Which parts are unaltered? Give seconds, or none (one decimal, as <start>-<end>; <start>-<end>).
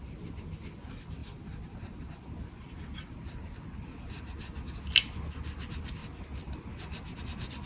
0.0-7.7